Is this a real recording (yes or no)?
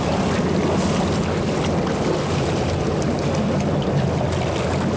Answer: yes